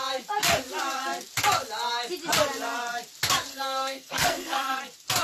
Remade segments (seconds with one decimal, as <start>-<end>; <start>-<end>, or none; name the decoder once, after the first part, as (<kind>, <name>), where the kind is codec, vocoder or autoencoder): 3.5-4.8 (codec, SNAC)